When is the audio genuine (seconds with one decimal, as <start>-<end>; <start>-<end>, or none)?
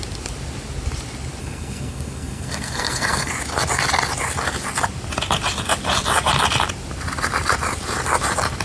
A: 0.0-1.4; 3.3-8.6